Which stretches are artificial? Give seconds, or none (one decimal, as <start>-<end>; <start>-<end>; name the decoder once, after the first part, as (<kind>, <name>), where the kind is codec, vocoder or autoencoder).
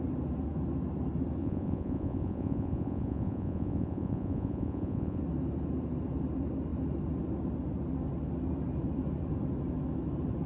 1.4-5.2 (vocoder, Vocos)